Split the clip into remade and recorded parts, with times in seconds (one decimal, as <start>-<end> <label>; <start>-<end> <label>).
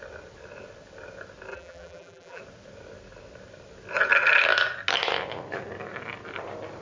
0.0-1.5 recorded; 1.5-2.4 remade; 2.4-6.8 recorded